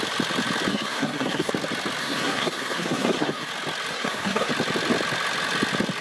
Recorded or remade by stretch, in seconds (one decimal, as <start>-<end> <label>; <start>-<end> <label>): 0.0-0.7 recorded; 0.7-1.5 remade; 1.5-2.0 recorded; 2.0-3.5 remade; 3.5-3.9 recorded; 3.9-4.5 remade; 4.5-6.0 recorded